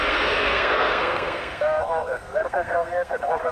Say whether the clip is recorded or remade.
remade